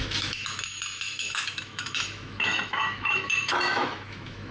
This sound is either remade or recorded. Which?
remade